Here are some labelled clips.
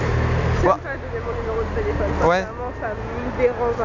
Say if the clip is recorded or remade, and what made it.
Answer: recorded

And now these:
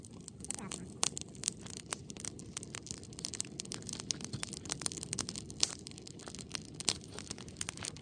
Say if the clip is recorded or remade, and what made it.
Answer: recorded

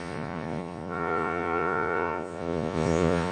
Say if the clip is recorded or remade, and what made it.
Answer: remade, vocoder, Vocos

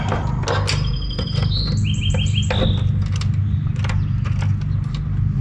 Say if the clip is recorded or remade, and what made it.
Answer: recorded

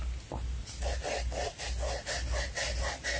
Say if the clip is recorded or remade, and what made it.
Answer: recorded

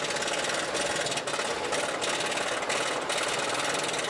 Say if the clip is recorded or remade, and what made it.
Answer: recorded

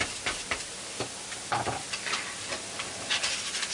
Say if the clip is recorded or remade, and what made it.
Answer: recorded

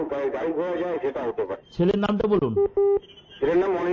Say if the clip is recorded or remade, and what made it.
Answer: recorded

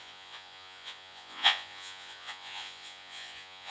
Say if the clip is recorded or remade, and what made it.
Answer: remade, vocoder, Vocos